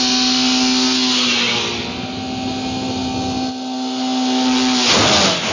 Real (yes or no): yes